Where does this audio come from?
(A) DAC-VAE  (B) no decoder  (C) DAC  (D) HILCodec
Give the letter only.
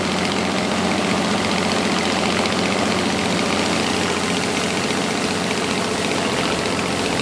B